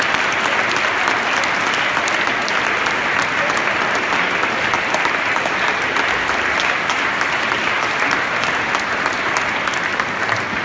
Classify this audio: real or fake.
real